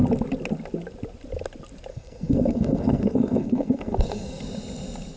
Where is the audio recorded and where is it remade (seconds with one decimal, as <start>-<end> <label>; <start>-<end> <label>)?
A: 0.0-1.9 recorded; 1.9-4.4 remade; 4.4-5.2 recorded